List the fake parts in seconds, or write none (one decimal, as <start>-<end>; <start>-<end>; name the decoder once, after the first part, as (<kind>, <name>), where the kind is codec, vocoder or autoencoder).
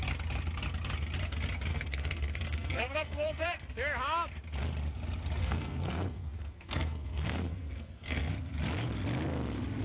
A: 1.7-3.7 (codec, SNAC); 5.4-8.3